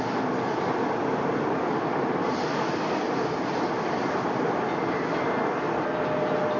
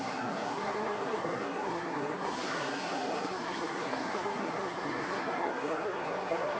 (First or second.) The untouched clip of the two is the first